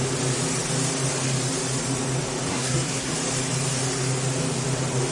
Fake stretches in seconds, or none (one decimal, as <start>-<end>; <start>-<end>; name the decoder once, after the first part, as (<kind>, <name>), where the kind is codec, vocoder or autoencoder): 2.5-3.1 (codec, SNAC)